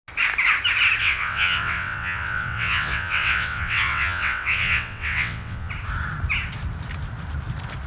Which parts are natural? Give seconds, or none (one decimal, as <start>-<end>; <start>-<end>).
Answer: 0.0-1.0; 5.7-7.9